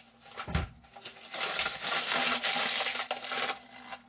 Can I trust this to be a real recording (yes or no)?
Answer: yes